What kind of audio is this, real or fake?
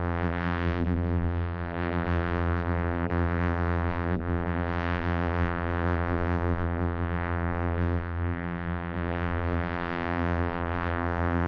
fake